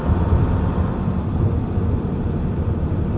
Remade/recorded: recorded